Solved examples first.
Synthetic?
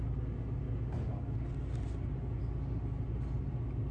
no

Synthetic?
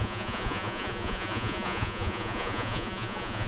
yes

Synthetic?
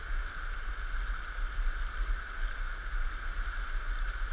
no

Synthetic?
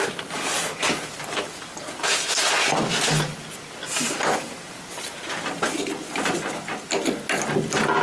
no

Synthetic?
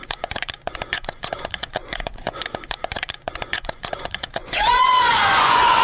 yes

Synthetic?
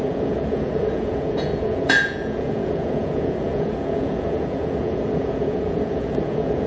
yes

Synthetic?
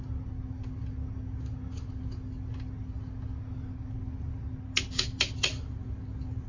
no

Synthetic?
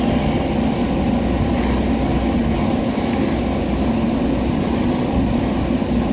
no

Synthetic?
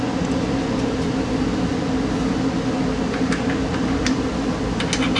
no